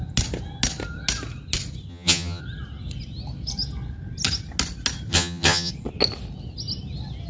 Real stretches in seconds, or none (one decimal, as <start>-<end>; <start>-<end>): 0.0-1.9; 2.4-5.1; 5.7-7.3